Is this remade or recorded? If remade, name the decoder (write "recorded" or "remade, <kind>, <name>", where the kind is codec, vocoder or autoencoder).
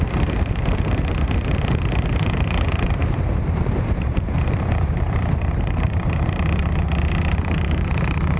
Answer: remade, vocoder, BigVGAN v2